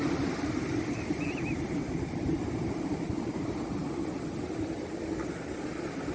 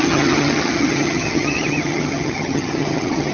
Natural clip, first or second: first